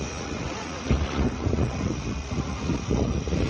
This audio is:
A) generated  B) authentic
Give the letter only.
A